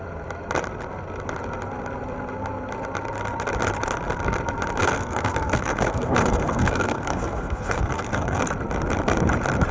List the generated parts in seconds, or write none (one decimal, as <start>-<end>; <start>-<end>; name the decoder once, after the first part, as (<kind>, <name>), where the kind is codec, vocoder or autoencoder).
4.8-8.4 (codec, SNAC)